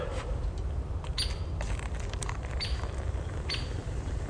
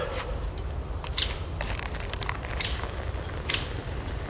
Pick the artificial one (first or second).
first